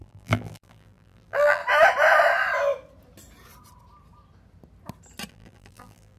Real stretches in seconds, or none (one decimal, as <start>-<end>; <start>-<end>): 1.6-5.3